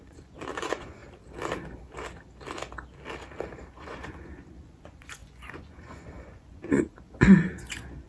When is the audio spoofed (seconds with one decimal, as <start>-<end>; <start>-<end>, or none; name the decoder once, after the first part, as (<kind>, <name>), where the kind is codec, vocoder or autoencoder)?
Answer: 0.0-1.0 (vocoder, Vocos); 3.7-8.1